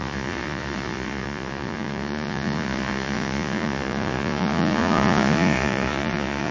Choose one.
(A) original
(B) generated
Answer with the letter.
B